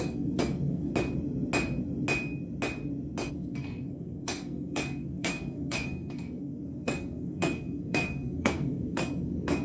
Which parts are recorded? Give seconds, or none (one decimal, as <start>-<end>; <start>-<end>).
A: 0.9-3.3